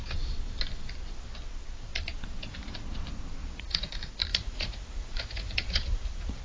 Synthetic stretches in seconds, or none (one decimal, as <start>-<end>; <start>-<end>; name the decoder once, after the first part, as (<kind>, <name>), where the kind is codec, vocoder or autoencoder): 3.4-3.9 (vocoder, Vocos); 4.3-6.4